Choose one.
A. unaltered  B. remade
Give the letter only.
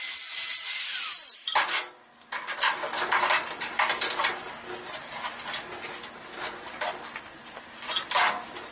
A